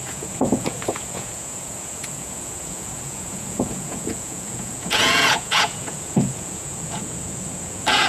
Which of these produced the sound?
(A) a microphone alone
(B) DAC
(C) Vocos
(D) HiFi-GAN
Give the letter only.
C